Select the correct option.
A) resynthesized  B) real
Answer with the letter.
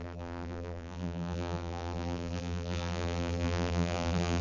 A